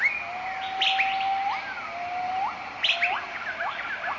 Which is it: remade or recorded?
recorded